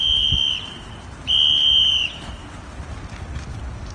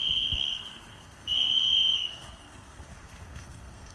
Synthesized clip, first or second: second